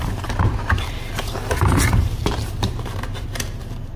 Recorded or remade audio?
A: remade